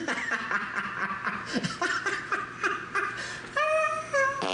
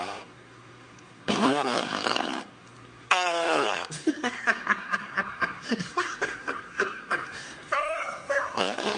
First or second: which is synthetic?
second